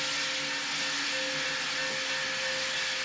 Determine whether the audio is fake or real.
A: real